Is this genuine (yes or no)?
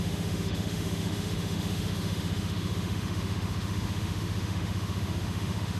no